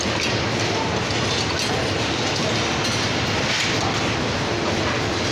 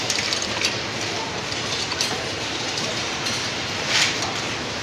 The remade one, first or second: second